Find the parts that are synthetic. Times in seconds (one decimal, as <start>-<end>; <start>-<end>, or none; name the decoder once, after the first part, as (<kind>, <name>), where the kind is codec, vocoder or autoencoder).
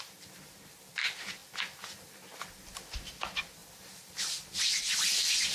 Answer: 0.0-1.4 (vocoder, BigVGAN v2); 3.2-5.5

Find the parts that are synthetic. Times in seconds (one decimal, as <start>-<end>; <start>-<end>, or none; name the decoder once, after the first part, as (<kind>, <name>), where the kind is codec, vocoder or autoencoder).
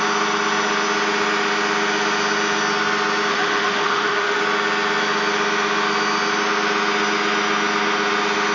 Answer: 3.3-4.4 (autoencoder, DAC-VAE)